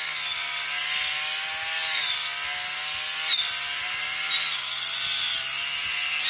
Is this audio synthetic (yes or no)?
no